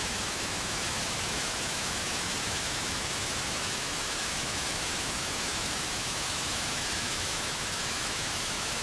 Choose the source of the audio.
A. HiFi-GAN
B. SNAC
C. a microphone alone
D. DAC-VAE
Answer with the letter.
D